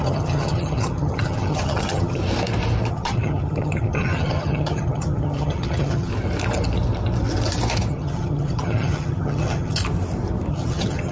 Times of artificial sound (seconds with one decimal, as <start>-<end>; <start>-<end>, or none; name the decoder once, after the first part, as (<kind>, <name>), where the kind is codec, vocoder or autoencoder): 0.0-2.2 (vocoder, HiFi-GAN); 2.9-6.1; 7.9-9.8; 10.5-11.1